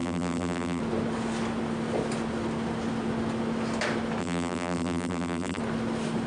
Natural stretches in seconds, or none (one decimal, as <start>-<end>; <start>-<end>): 0.8-4.2; 5.6-6.3